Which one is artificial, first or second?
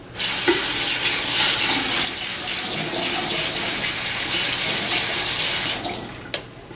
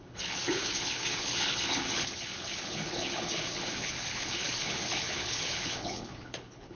second